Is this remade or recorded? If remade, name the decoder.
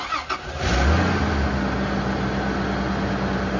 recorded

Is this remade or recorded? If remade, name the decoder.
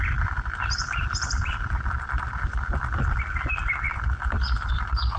remade, vocoder, BigVGAN v2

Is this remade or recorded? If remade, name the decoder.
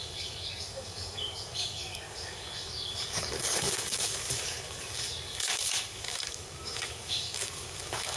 remade, codec, DAC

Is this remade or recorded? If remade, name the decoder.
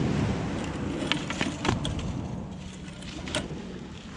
recorded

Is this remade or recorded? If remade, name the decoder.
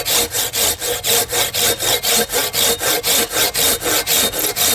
recorded